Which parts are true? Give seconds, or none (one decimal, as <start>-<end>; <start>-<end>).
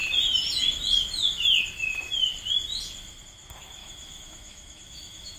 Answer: 0.0-3.8